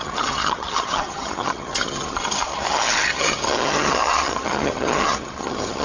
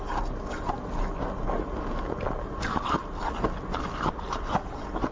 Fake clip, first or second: first